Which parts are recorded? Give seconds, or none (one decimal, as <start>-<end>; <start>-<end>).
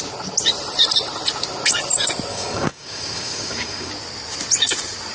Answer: 0.0-2.3; 3.9-5.1